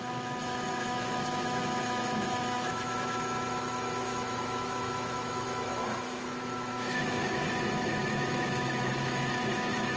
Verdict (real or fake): fake